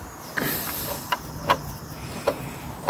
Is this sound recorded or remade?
recorded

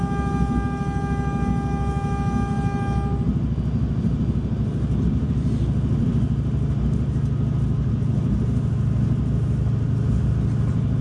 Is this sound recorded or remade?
recorded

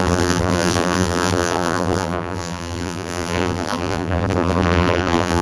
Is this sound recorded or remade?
remade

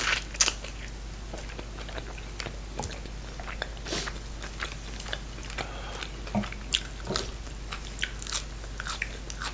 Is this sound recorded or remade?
recorded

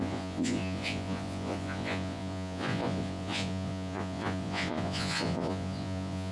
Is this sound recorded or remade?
remade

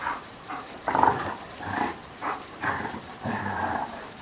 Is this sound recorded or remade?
remade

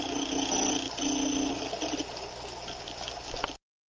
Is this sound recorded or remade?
recorded